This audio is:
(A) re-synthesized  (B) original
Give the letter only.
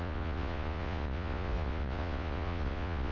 A